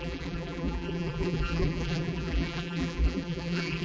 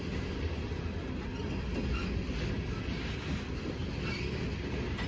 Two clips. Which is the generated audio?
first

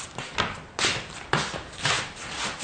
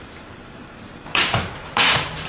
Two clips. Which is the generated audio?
second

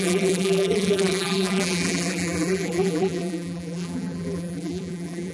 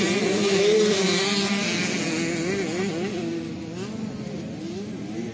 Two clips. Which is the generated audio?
first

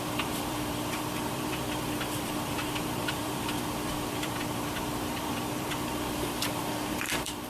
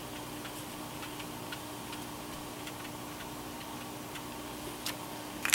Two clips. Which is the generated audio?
first